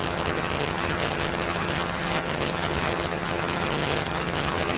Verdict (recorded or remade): remade